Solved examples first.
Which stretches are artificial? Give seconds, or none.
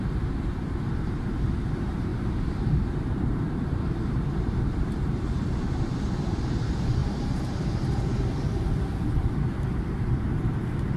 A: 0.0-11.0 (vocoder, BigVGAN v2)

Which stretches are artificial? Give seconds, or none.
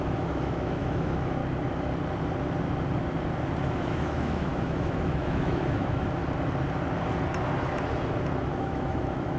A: 0.0-1.4 (autoencoder, DAC-VAE); 3.6-6.2; 8.5-9.4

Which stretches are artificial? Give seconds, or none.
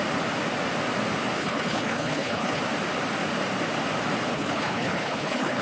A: 1.4-2.6 (codec, HILCodec); 4.3-5.6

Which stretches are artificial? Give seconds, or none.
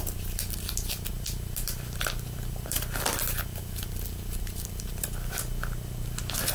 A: 1.1-5.0 (vocoder, BigVGAN v2)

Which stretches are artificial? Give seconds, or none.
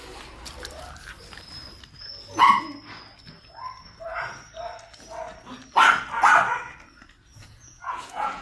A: 7.3-8.4 (vocoder, Vocos)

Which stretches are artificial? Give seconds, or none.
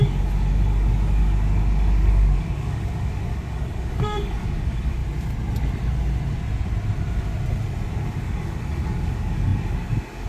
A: 0.0-5.0 (codec, DAC); 7.9-10.3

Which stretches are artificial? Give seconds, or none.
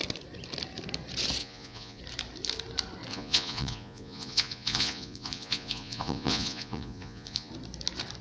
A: 1.4-2.0 (vocoder, Vocos); 3.1-7.5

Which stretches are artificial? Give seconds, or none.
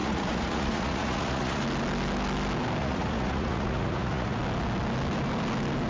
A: 0.0-1.6 (vocoder, Vocos); 2.8-4.4